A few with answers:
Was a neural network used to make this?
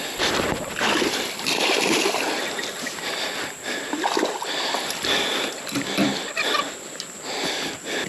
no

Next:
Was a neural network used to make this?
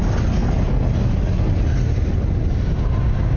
no